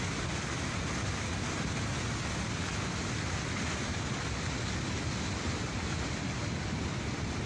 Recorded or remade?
recorded